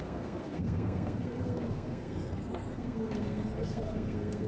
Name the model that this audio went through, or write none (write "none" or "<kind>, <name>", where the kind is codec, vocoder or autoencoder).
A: codec, SNAC